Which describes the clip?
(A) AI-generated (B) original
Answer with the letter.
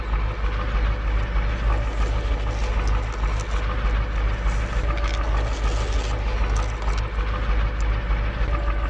B